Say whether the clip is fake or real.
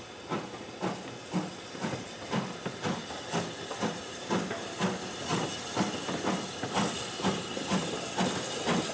real